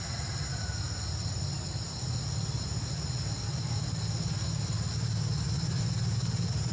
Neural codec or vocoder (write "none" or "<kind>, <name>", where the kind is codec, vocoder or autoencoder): none